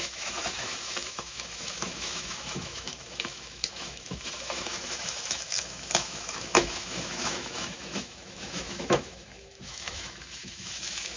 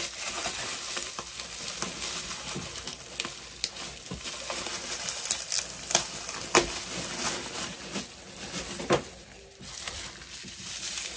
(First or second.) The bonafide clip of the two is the second